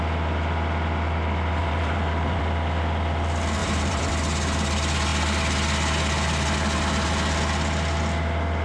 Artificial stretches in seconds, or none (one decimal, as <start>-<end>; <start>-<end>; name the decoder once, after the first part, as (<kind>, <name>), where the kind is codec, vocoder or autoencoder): 1.6-2.4 (vocoder, BigVGAN v2); 3.6-4.1